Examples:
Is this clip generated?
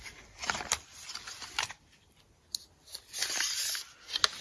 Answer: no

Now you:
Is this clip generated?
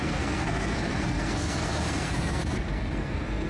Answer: yes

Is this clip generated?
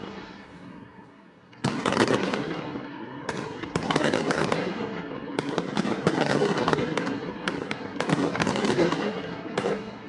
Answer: yes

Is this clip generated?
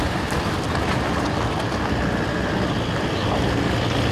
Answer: no